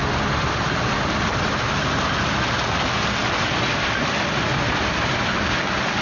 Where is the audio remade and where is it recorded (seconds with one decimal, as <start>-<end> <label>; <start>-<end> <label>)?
0.0-6.0 recorded